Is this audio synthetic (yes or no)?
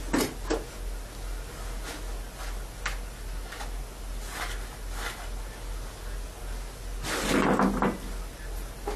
no